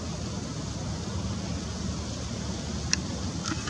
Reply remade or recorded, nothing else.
recorded